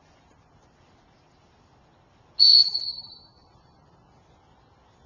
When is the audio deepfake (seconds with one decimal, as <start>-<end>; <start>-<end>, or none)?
2.5-3.2